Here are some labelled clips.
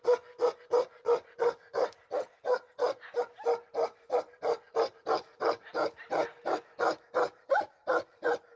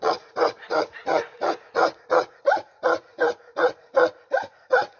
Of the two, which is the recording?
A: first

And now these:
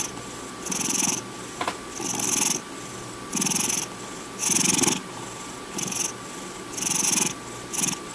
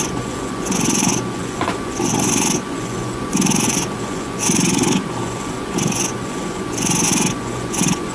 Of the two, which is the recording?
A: first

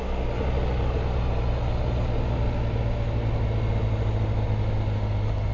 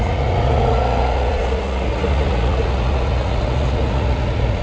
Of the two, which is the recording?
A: first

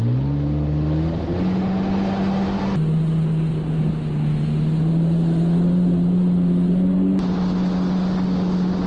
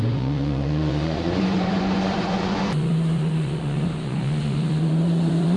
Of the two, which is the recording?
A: first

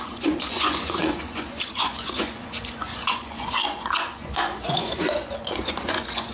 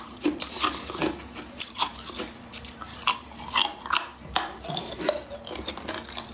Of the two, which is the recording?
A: second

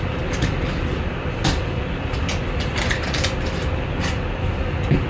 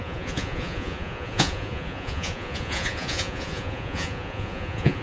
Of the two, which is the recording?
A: first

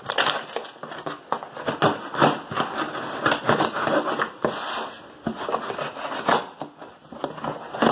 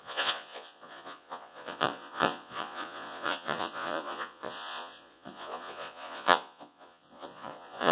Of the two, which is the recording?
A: first